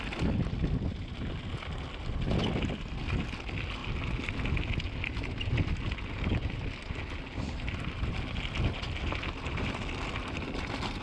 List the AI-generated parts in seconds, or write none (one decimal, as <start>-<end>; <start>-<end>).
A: none